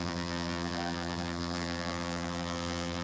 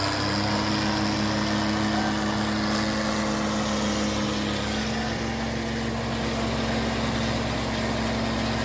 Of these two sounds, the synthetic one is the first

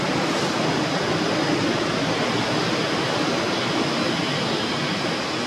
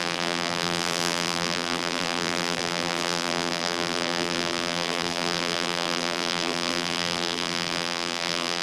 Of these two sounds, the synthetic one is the second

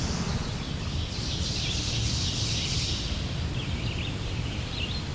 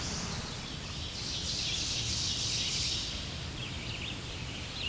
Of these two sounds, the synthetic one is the first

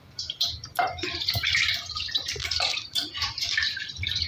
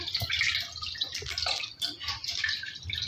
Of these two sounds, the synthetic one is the first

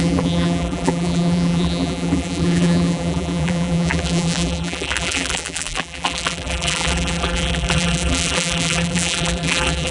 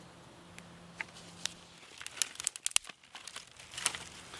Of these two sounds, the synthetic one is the first